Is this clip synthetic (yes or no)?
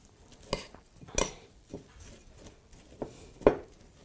no